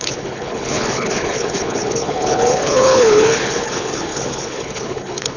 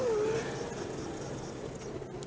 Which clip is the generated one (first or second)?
first